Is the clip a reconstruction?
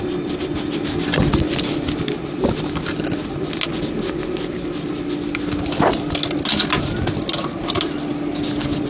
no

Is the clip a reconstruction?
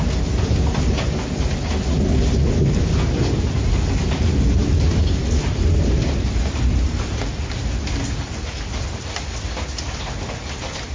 no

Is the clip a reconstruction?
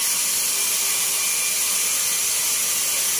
no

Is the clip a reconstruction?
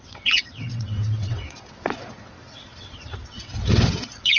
yes